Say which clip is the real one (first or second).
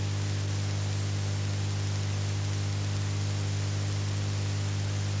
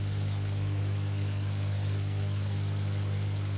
first